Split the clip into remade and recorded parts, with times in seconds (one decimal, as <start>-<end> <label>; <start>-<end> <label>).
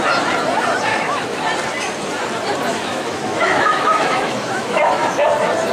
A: 0.0-0.9 recorded; 0.9-1.4 remade; 1.4-2.7 recorded; 2.7-5.3 remade; 5.3-5.7 recorded